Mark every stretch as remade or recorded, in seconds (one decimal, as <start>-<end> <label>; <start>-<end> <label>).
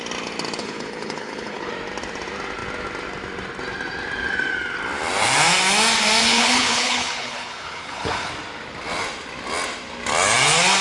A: 0.0-0.6 recorded; 0.6-1.7 remade; 1.7-6.2 recorded; 6.2-8.3 remade; 8.3-10.8 recorded